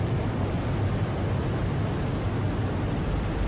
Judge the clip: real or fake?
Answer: real